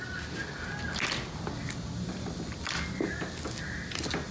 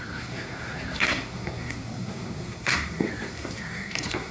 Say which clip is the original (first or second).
first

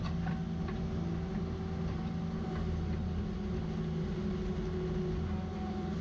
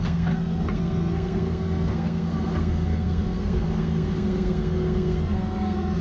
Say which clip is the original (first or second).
first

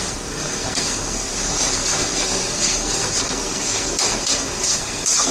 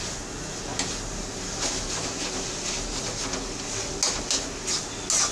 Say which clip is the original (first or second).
second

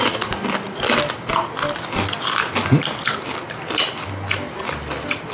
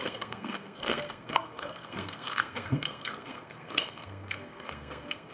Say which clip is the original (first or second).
first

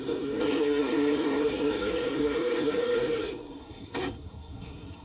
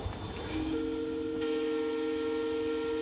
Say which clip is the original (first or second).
second